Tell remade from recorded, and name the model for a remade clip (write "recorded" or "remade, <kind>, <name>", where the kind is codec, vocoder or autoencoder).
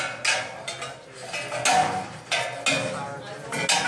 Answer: recorded